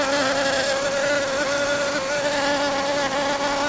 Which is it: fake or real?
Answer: real